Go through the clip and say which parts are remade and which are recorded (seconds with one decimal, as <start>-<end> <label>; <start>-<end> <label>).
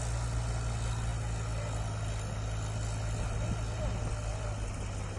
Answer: 0.0-5.2 recorded